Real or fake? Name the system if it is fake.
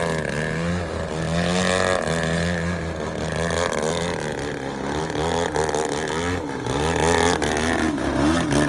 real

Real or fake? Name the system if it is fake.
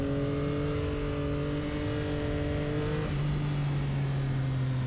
real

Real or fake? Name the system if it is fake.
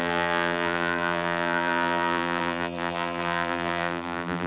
fake, vocoder, BigVGAN v2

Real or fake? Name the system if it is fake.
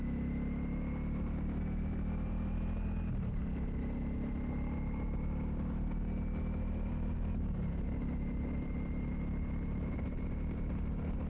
real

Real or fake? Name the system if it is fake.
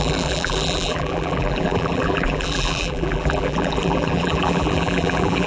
fake, vocoder, BigVGAN v2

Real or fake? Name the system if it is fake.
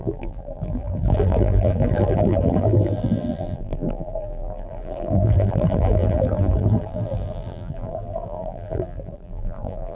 fake, vocoder, BigVGAN v2